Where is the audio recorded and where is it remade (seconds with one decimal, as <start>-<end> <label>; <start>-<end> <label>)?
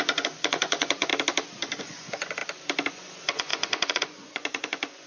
0.0-1.1 remade; 1.1-1.8 recorded; 1.8-2.4 remade; 2.4-2.9 recorded; 2.9-5.1 remade